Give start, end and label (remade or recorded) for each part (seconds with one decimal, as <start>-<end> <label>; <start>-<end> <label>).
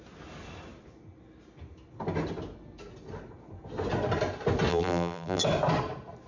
0.0-4.7 recorded; 4.7-5.4 remade; 5.4-6.3 recorded